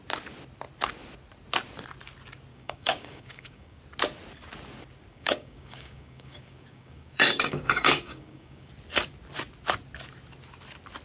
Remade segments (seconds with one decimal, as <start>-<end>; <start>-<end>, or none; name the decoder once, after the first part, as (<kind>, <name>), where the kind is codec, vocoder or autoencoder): 2.5-3.8 (codec, DAC); 5.1-8.7